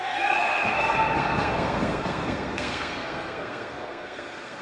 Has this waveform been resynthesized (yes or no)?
yes